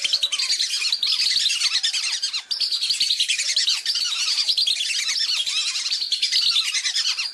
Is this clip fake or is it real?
real